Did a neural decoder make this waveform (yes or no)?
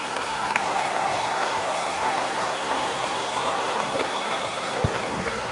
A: yes